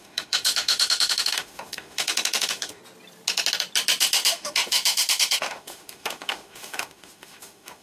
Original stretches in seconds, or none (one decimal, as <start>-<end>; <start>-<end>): 2.8-4.0